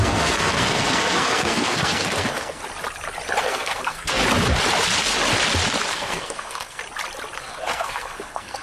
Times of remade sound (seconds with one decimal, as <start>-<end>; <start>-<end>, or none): 0.0-2.6; 3.4-4.2; 5.9-6.8; 7.4-8.6